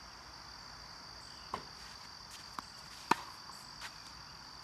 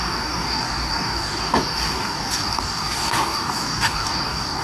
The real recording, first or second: first